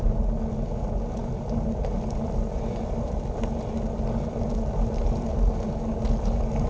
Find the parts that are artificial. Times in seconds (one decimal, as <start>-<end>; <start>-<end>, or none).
none